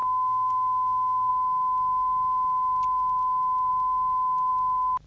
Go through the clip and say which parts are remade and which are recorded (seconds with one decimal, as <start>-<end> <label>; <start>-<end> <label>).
0.0-1.3 remade; 1.3-5.1 recorded